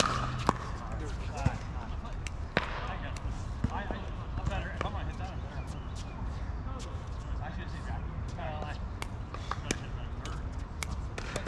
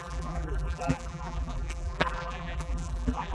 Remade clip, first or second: second